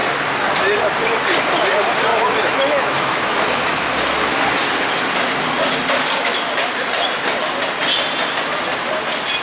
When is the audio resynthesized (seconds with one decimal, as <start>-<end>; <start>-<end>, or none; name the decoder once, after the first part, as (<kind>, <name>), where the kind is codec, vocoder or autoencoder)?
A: 2.1-3.9 (autoencoder, DAC-VAE)